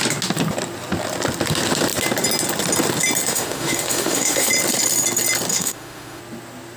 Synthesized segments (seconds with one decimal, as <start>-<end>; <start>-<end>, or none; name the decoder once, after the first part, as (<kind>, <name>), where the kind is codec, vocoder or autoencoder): 3.3-4.5 (autoencoder, DAC-VAE); 5.5-6.2